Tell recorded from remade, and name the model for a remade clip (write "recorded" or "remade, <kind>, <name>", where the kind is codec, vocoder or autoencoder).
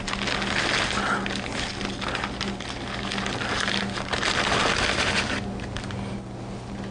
recorded